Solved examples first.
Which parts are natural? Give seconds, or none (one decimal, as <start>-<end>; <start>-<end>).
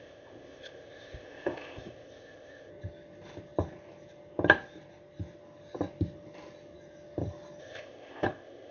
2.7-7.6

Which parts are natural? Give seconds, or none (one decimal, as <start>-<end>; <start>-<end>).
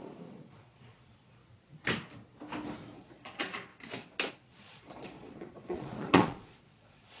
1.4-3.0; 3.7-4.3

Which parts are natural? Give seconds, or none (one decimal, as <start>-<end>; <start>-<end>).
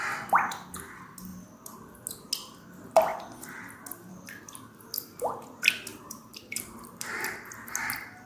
0.0-5.9; 7.4-8.3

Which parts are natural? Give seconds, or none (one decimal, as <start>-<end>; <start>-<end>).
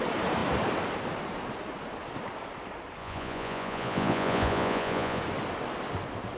0.0-3.0; 5.2-6.4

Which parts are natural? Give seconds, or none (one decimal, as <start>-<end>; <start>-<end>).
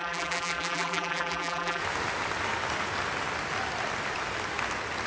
1.8-5.1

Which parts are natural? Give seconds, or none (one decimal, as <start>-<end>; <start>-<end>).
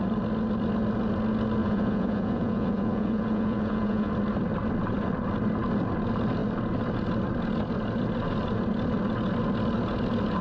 0.0-1.6; 4.1-10.4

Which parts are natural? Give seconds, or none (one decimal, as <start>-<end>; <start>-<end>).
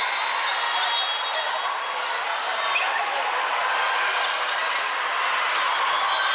0.0-6.3